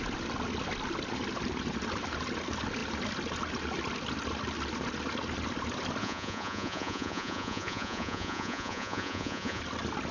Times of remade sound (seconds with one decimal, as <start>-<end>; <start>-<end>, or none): 6.0-9.6